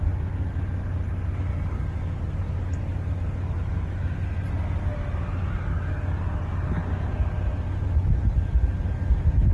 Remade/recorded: recorded